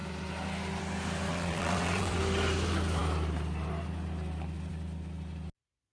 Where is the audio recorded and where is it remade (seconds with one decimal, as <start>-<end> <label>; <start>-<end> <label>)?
0.0-1.3 recorded; 1.3-2.2 remade; 2.2-5.9 recorded